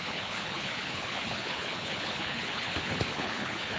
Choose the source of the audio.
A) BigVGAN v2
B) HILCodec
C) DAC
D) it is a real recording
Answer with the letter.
B